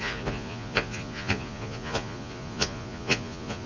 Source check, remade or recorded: remade